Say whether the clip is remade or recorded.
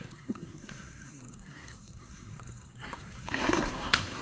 remade